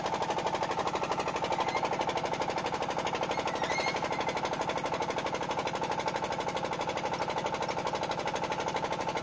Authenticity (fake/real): real